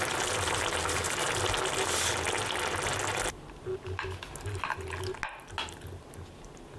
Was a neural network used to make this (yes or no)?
no